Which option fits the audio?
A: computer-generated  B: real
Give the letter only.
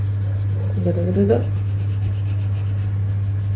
B